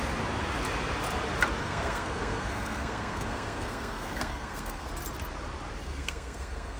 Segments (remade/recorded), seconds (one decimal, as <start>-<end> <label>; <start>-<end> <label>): 0.0-1.6 recorded; 1.6-4.9 remade; 4.9-5.9 recorded; 5.9-6.8 remade